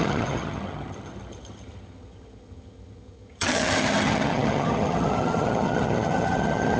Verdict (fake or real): fake